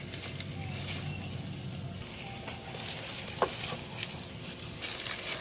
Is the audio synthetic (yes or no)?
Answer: no